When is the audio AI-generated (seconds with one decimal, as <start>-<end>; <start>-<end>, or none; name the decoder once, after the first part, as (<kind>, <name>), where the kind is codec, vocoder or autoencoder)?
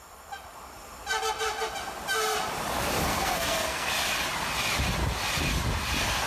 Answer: 3.1-3.9 (codec, SNAC)